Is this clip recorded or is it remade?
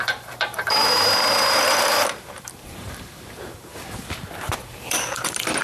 remade